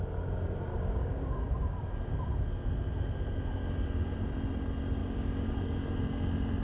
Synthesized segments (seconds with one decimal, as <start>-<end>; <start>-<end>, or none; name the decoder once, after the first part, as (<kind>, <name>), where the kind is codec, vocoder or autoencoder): 0.7-1.5 (codec, DAC); 5.0-6.0